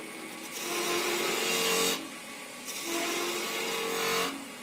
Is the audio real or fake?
real